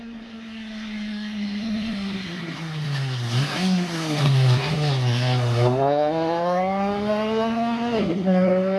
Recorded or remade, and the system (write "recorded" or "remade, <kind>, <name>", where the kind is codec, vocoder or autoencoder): remade, codec, SNAC